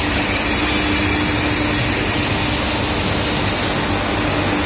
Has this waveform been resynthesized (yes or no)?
no